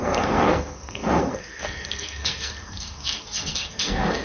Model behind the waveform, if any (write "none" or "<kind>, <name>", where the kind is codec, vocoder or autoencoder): codec, SNAC